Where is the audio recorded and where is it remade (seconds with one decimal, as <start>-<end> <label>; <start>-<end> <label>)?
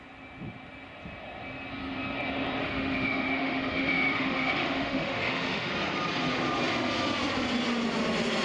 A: 0.0-2.6 recorded; 2.6-5.7 remade; 5.7-8.4 recorded